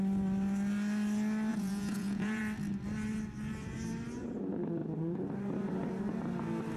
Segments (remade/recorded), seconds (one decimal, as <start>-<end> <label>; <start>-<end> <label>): 0.0-1.5 recorded; 1.5-2.4 remade; 2.4-6.8 recorded